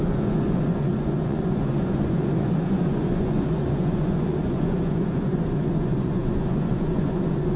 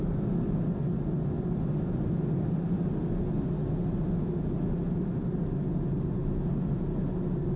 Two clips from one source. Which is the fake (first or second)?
first